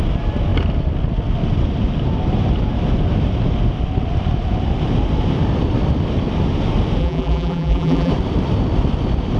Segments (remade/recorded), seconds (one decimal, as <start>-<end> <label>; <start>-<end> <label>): 0.0-7.0 recorded; 7.0-8.1 remade; 8.1-9.4 recorded